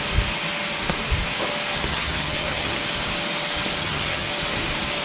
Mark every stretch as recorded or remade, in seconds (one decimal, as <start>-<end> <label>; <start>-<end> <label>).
0.0-1.9 recorded; 1.9-2.7 remade; 2.7-3.8 recorded; 3.8-4.3 remade; 4.3-5.0 recorded